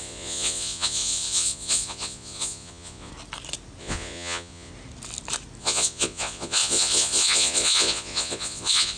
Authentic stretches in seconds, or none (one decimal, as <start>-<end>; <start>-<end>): 3.1-3.8; 4.7-5.6